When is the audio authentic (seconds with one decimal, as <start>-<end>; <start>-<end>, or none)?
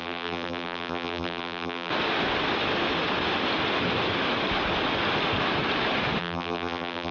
1.9-6.2